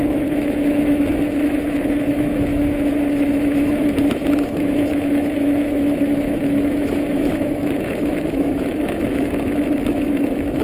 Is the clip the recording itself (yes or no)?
no